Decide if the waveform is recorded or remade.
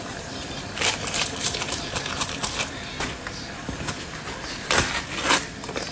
remade